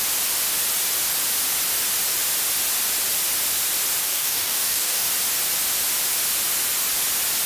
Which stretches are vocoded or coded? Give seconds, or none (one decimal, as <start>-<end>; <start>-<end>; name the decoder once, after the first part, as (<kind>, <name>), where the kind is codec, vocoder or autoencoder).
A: 4.0-5.1 (codec, DAC)